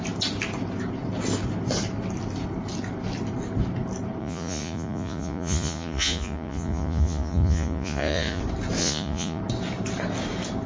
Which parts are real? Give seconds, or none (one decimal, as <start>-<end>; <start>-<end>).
0.0-4.2; 8.4-8.8; 9.4-10.7